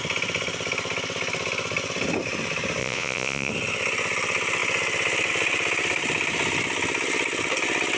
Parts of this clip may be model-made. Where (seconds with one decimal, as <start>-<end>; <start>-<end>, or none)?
2.8-3.5